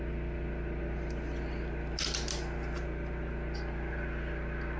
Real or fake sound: real